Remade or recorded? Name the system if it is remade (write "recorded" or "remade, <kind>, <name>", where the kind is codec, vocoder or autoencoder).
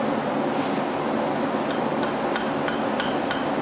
recorded